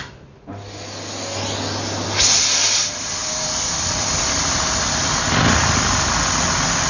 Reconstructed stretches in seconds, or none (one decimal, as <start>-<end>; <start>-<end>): 3.2-6.1